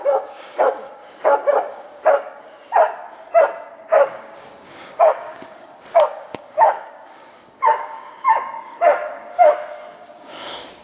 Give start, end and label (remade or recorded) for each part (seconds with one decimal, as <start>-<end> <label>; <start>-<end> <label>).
0.0-2.7 remade; 2.7-3.7 recorded; 3.7-10.8 remade